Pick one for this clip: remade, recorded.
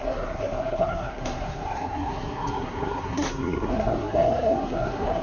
remade